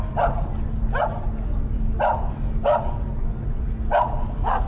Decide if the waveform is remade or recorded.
recorded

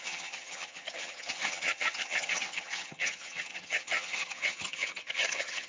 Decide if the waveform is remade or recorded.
remade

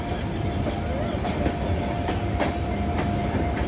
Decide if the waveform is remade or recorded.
recorded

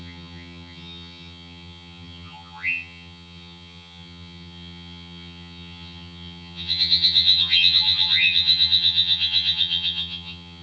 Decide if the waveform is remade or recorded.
remade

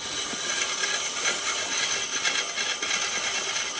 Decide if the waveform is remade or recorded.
recorded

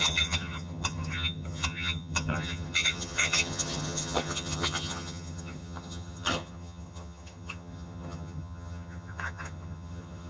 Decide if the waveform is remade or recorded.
remade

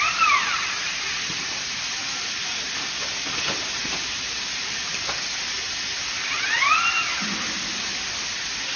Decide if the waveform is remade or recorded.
recorded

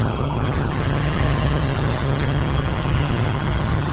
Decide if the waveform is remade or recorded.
remade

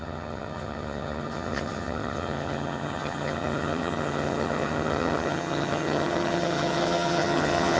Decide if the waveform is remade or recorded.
remade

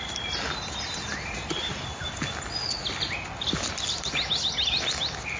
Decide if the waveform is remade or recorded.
recorded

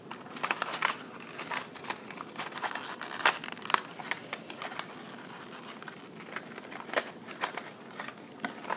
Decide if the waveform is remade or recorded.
recorded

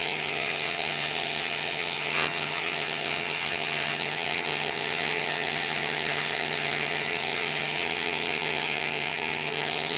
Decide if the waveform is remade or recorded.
remade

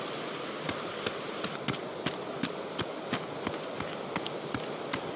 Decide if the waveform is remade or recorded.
recorded